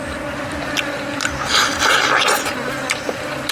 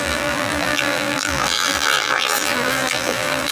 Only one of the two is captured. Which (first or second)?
first